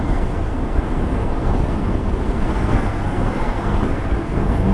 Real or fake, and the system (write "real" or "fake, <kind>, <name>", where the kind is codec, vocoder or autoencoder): fake, codec, SNAC